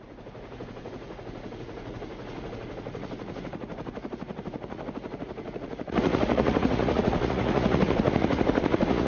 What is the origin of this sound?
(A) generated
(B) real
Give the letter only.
A